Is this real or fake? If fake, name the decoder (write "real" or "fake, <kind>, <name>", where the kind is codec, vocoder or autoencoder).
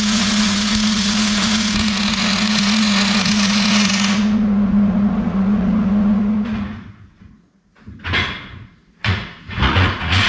fake, vocoder, Vocos